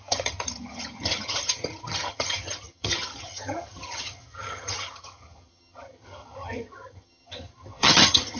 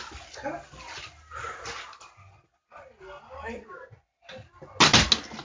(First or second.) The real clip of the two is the second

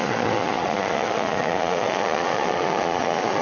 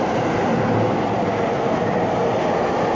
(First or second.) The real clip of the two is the second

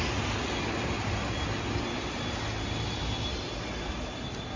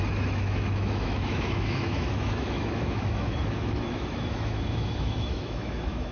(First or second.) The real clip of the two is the first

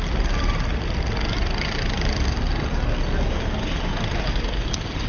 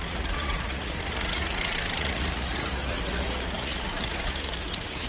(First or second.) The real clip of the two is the first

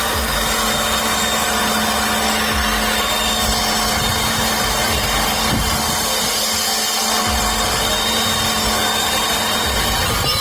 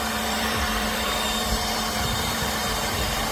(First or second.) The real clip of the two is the first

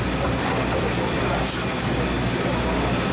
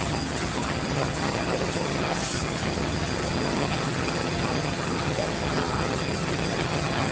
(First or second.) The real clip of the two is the first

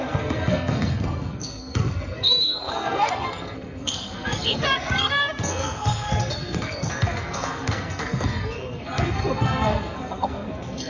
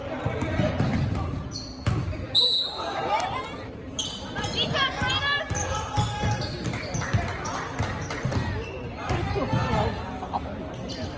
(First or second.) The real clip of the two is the second